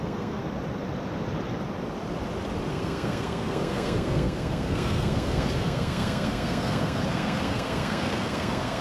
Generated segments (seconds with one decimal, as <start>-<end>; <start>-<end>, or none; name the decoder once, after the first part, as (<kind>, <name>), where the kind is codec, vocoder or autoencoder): 0.0-0.4 (codec, SNAC); 2.7-8.8